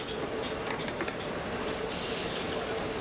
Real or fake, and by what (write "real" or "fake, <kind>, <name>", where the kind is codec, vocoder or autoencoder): real